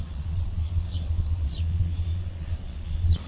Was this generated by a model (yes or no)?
yes